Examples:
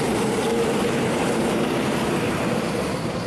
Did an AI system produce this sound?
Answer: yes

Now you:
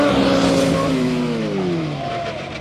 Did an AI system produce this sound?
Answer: no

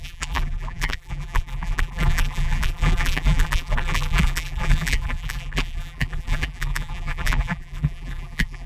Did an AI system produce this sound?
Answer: yes